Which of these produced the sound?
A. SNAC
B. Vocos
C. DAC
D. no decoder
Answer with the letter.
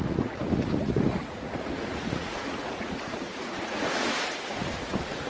B